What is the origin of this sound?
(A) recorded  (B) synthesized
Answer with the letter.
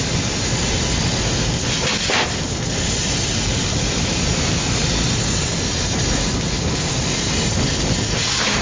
A